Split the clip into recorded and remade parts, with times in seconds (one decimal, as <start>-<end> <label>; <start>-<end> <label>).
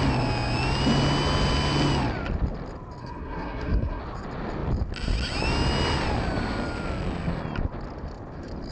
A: 0.0-3.0 recorded; 3.0-4.0 remade; 4.0-8.7 recorded